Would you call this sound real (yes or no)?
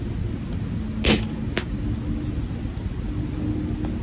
yes